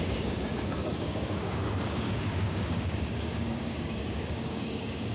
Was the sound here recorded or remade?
remade